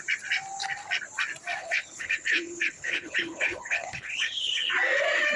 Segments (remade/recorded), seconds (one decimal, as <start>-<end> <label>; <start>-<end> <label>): 0.0-1.6 recorded; 1.6-4.7 remade; 4.7-5.4 recorded